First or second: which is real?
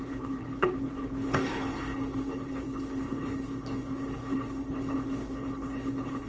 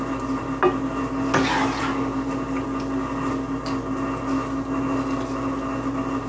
second